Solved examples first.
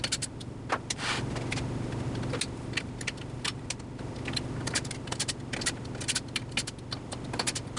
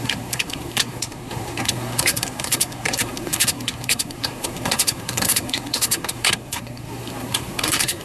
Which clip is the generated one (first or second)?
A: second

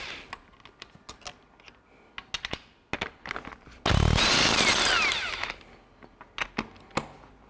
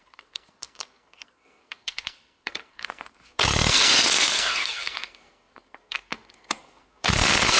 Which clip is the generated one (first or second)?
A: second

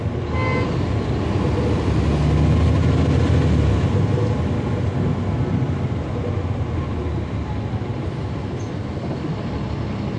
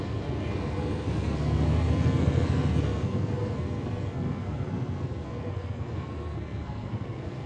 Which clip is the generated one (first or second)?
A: second